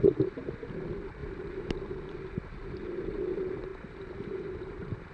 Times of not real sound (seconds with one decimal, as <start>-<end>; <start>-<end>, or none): 3.7-5.1